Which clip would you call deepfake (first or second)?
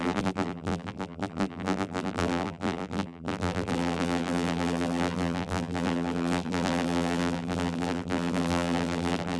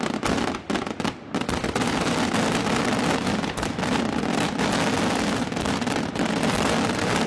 first